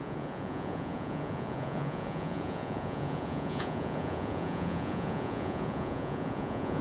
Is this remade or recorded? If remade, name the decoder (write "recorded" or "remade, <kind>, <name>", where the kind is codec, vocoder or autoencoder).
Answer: remade, vocoder, Vocos